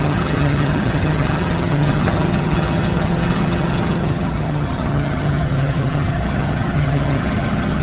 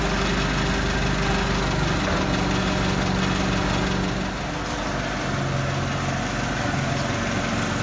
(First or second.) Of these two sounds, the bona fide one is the second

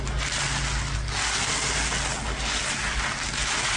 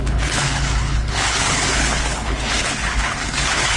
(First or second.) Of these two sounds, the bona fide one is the first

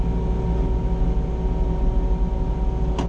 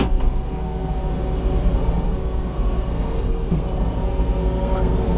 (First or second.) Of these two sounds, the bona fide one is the first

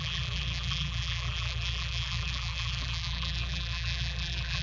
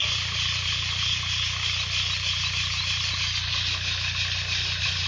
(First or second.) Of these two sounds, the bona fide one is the second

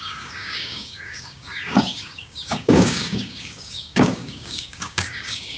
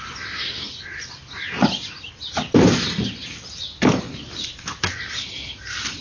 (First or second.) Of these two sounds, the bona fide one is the second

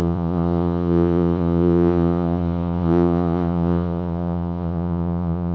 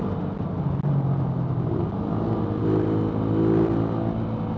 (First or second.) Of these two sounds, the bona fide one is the second